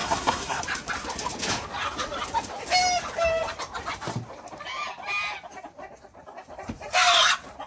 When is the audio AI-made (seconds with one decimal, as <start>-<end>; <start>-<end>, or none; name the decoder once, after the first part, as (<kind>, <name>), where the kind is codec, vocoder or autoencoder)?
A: 0.0-0.6 (codec, SNAC)